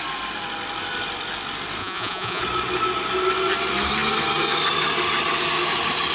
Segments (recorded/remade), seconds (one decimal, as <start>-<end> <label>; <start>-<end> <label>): 0.0-1.8 recorded; 1.8-2.4 remade; 2.4-6.1 recorded